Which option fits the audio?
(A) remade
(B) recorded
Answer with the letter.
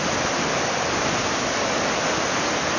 B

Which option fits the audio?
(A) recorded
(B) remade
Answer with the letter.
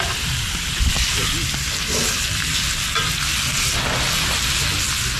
A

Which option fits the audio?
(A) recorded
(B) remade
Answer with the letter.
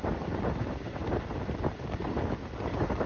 A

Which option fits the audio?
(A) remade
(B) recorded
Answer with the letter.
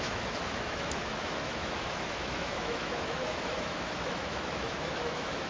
A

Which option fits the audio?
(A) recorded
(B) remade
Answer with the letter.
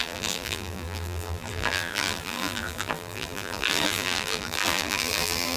B